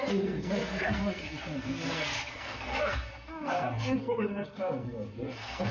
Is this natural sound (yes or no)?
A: no